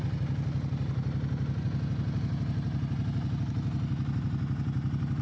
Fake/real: real